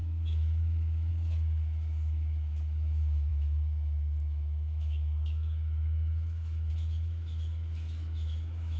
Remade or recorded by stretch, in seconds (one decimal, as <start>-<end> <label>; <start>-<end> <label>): 0.0-8.8 remade